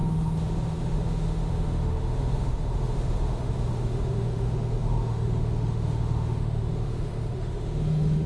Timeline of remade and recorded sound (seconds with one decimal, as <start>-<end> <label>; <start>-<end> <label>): 0.0-8.3 remade